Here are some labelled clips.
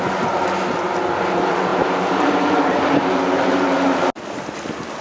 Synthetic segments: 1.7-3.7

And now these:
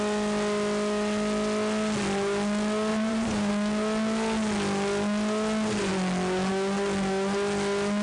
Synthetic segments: 2.9-3.5

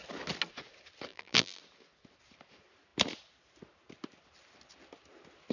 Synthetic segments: 1.1-1.6